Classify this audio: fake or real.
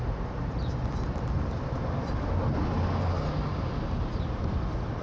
real